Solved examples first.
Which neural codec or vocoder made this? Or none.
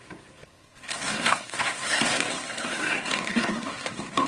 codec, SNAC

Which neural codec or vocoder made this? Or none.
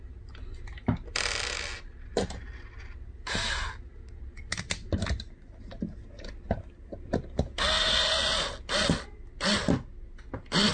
none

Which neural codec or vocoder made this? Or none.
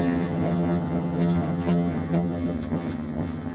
vocoder, HiFi-GAN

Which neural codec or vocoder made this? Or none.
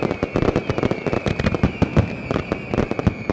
none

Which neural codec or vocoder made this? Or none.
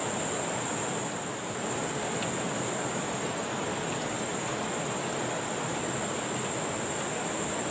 none